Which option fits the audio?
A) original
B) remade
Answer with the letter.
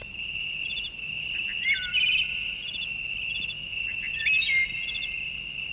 B